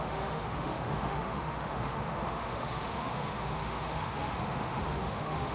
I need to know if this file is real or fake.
fake